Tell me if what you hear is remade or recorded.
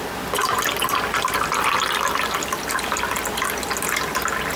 recorded